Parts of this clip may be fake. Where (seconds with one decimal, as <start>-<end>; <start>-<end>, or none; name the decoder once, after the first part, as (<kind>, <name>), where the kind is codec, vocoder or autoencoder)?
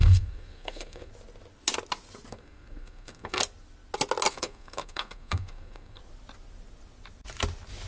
0.0-1.1 (codec, SNAC); 2.3-3.4; 4.3-6.0